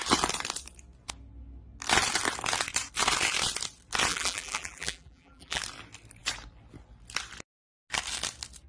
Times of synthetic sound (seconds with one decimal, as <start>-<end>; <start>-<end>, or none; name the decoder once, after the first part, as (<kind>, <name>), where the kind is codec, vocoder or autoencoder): 4.1-5.6 (vocoder, BigVGAN v2)